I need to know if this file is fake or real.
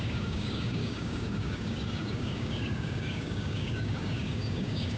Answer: fake